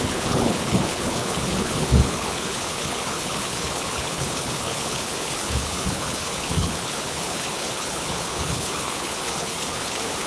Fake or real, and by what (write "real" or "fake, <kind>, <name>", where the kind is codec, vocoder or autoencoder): fake, codec, HILCodec